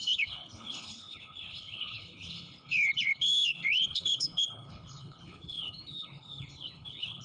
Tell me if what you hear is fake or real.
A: fake